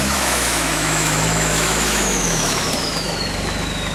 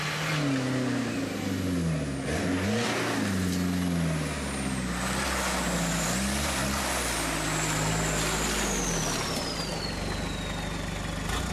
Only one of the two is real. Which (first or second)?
second